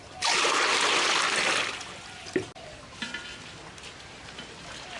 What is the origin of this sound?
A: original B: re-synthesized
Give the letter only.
A